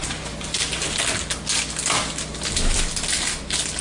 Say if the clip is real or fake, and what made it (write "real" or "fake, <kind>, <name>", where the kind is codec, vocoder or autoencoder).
real